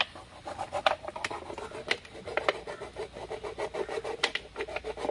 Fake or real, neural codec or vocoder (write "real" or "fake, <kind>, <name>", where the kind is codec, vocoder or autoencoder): real